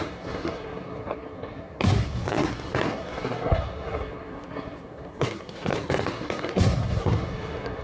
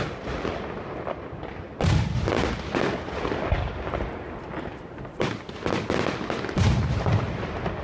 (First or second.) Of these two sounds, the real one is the second